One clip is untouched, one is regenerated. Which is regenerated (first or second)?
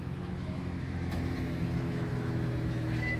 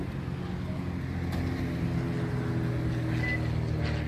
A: first